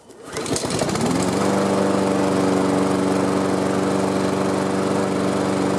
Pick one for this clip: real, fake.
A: real